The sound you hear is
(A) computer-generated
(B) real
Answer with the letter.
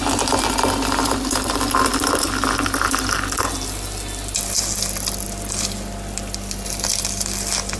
B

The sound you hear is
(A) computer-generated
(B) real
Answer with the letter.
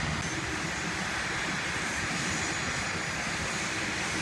B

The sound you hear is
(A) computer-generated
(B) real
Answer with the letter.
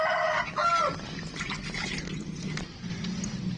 B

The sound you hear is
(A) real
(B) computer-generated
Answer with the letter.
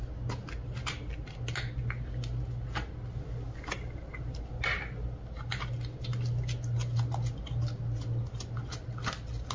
A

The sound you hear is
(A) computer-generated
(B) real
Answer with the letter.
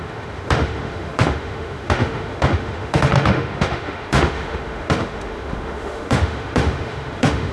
A